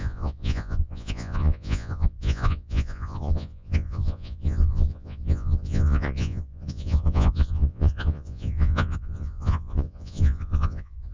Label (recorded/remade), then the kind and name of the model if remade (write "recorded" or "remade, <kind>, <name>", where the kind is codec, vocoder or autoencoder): remade, vocoder, Vocos